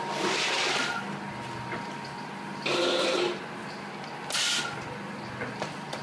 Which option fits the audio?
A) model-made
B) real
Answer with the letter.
B